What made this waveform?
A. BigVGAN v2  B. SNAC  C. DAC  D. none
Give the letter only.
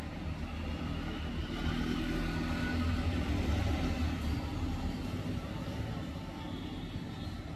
D